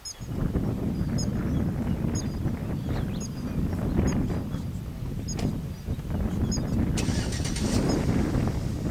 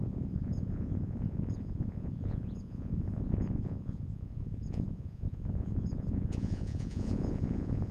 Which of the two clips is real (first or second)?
first